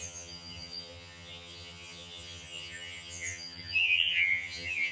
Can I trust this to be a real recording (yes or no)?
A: no